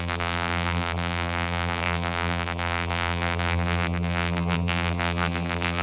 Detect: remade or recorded remade